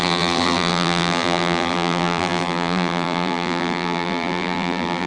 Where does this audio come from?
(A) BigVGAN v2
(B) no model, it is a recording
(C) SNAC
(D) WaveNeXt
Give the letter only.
A